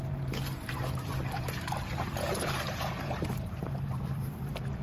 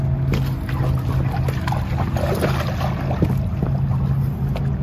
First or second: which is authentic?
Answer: second